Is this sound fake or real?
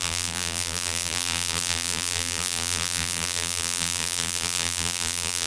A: fake